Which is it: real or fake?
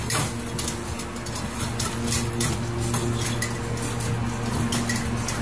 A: real